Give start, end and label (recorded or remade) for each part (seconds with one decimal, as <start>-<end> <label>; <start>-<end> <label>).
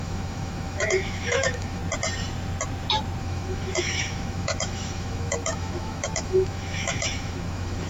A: 0.0-1.8 remade; 1.8-3.2 recorded; 3.2-7.9 remade